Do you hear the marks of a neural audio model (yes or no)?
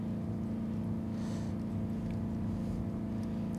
no